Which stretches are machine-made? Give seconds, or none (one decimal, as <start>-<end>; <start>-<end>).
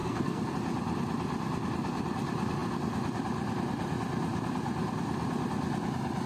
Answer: 0.0-0.5